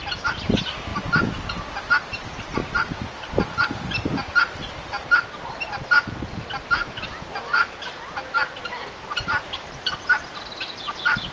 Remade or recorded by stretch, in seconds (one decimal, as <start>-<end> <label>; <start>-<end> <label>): 0.0-11.3 recorded